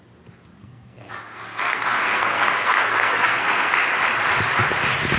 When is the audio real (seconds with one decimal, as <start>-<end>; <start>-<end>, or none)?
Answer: 0.0-0.6; 3.7-5.2